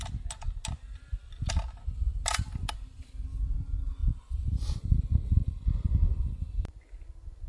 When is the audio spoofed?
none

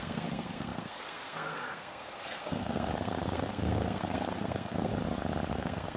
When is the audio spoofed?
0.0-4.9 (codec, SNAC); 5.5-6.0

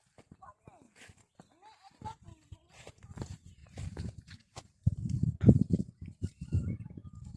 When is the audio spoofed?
3.6-6.5 (vocoder, BigVGAN v2)